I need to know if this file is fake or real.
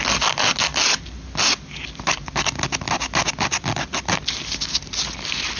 real